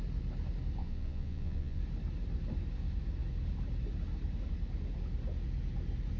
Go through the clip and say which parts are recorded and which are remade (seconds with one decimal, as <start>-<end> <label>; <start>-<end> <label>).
0.0-0.8 recorded; 0.8-1.8 remade; 1.8-6.2 recorded